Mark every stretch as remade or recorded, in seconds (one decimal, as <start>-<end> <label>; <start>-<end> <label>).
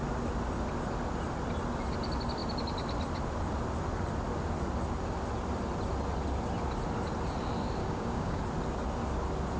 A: 0.0-7.8 recorded; 7.8-8.4 remade; 8.4-9.6 recorded